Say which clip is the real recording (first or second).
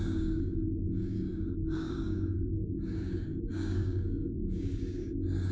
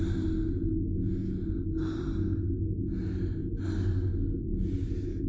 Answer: second